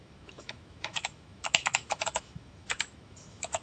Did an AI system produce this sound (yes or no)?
yes